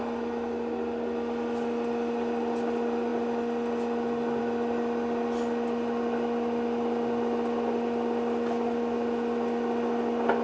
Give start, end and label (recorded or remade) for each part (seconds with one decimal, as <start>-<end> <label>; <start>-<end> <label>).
0.0-10.4 recorded